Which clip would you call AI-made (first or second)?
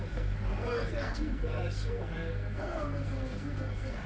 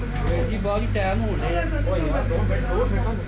first